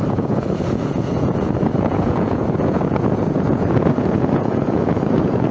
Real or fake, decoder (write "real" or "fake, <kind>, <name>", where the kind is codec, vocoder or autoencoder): fake, vocoder, Vocos